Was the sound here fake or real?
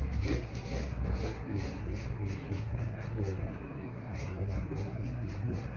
fake